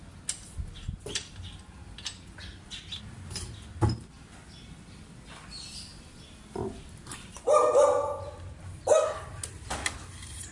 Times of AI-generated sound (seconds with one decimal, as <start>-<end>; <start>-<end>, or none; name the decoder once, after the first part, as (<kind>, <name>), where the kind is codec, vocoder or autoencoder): none